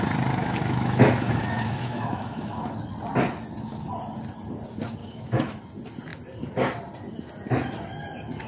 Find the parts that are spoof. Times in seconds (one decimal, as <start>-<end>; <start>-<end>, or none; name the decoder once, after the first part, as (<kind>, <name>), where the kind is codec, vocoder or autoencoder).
0.4-2.7 (autoencoder, DAC-VAE); 5.0-5.6